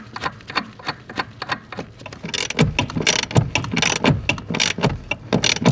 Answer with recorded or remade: recorded